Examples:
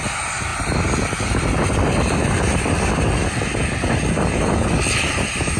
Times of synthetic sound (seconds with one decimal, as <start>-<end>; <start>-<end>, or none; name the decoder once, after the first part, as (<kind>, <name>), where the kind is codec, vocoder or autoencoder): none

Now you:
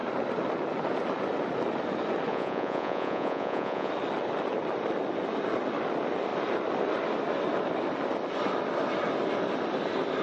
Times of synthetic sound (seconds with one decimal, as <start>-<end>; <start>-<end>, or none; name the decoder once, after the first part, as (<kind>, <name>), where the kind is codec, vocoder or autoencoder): 2.3-3.9 (vocoder, Vocos)

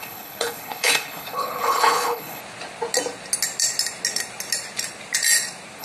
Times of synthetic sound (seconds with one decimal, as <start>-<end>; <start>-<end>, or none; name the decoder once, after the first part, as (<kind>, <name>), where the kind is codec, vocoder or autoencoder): 0.0-2.4 (codec, HILCodec)

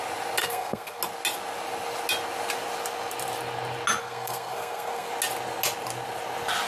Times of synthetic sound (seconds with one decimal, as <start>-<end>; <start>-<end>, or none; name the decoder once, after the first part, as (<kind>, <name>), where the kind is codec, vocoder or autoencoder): 0.4-1.0 (codec, SNAC); 4.0-5.1

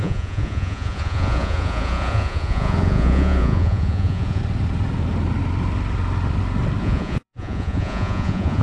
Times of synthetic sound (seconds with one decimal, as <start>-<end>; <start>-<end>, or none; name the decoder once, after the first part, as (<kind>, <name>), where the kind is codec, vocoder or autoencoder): 0.0-4.4 (vocoder, Vocos); 6.8-8.6

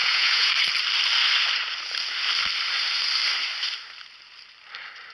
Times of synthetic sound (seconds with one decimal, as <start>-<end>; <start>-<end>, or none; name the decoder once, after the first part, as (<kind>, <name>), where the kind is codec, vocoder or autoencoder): 0.0-0.5 (vocoder, Vocos)